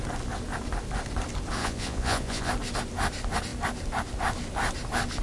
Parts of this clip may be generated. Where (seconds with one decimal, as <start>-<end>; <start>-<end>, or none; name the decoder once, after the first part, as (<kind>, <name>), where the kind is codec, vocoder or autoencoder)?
1.6-2.5 (vocoder, Vocos)